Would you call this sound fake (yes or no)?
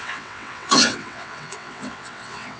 yes